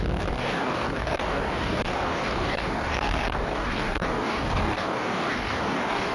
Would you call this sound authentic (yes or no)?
no